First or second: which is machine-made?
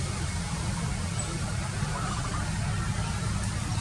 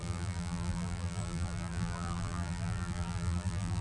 second